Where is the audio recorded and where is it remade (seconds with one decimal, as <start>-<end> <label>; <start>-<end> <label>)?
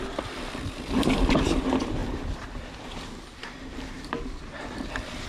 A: 0.0-2.0 recorded; 2.0-5.3 remade